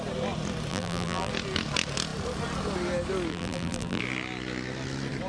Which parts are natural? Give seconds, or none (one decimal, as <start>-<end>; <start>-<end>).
0.0-0.7; 1.3-3.3; 4.0-5.3